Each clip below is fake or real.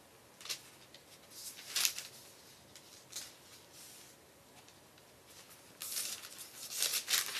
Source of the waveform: real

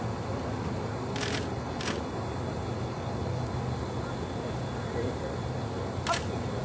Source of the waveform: real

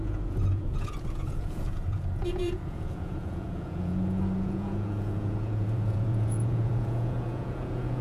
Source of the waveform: fake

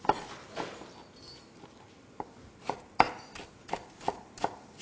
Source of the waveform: real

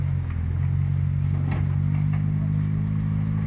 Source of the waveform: real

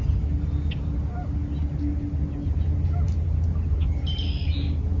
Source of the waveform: real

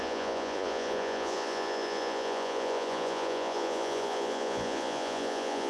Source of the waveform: fake